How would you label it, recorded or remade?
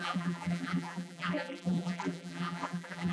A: remade